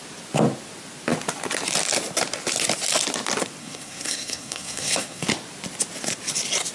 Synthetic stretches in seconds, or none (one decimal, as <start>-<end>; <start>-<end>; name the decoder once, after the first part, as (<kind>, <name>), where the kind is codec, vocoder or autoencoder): 3.6-5.3 (codec, SNAC)